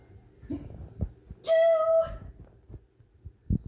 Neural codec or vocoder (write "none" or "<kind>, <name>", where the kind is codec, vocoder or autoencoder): none